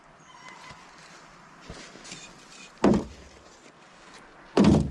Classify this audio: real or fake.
real